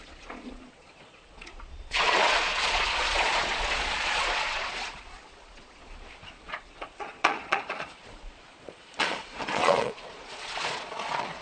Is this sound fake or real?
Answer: fake